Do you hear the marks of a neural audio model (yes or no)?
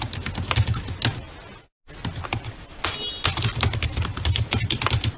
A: no